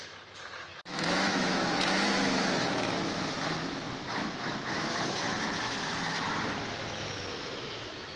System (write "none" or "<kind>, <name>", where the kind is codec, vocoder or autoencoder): autoencoder, DAC-VAE